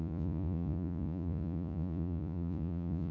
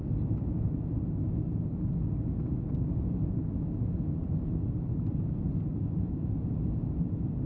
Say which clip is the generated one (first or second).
first